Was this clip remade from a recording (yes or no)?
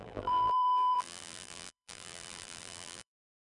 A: yes